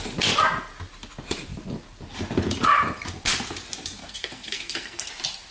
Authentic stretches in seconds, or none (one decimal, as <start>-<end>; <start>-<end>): 0.0-4.0; 5.1-5.5